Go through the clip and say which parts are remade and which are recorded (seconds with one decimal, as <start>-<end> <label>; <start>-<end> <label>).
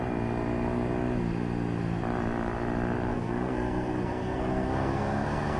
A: 0.0-3.1 recorded; 3.1-5.6 remade